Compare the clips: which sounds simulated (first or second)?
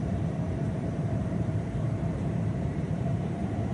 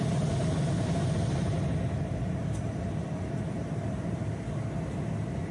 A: first